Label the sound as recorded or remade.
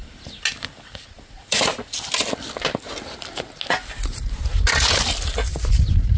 recorded